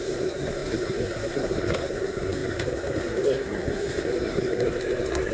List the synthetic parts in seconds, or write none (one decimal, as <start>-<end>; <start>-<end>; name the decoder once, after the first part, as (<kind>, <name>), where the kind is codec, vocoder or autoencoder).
0.0-5.3 (codec, SNAC)